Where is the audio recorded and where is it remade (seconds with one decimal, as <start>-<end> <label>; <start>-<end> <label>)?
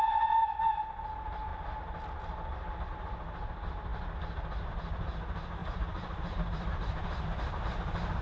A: 0.0-5.6 recorded; 5.6-7.6 remade; 7.6-8.2 recorded